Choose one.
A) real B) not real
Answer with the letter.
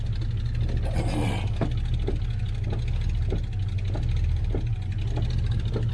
A